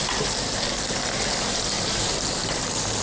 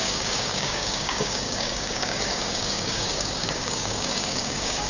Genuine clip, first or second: first